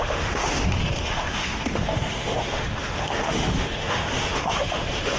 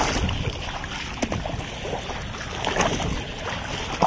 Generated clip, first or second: first